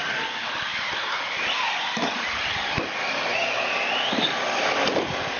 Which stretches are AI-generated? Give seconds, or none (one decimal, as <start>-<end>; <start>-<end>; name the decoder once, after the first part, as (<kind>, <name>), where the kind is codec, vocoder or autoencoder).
none